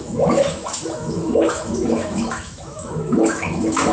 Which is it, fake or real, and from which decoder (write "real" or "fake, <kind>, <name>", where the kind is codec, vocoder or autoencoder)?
fake, autoencoder, DAC-VAE